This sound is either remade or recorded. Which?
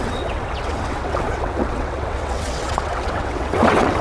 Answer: remade